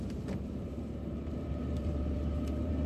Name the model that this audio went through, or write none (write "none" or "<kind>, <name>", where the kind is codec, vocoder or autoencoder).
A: vocoder, BigVGAN v2